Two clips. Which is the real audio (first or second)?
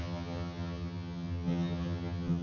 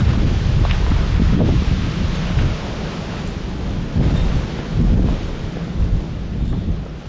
second